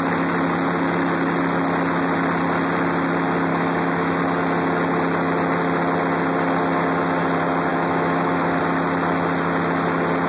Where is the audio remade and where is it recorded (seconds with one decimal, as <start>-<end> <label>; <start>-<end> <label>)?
0.0-3.5 recorded; 3.5-4.2 remade; 4.2-7.7 recorded; 7.7-8.6 remade; 8.6-10.3 recorded